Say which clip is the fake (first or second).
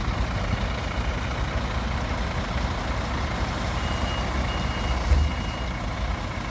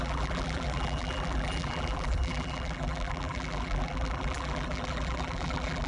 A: second